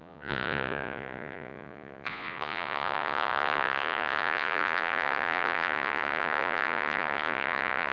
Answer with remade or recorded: remade